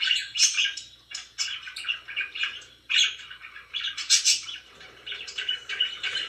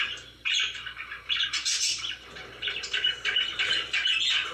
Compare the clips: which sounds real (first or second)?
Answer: second